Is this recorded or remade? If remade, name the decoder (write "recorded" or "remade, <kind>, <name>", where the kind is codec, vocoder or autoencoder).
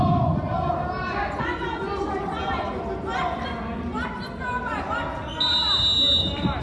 recorded